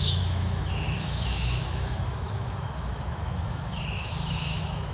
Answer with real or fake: fake